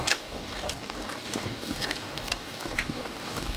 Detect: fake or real fake